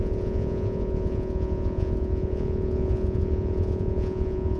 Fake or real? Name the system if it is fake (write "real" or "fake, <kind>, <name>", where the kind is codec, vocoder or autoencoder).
fake, vocoder, Vocos